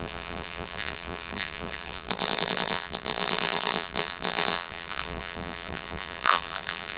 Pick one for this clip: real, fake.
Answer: fake